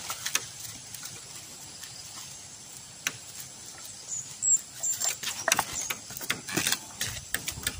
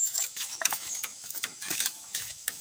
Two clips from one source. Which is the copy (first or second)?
second